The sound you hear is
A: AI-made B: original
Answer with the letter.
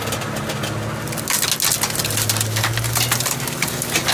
B